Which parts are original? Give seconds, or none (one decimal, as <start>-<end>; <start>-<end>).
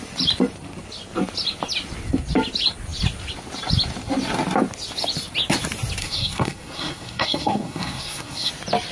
0.0-6.0; 8.5-8.9